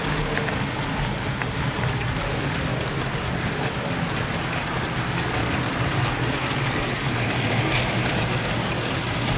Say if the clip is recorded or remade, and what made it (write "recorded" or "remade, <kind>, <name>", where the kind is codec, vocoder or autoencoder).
recorded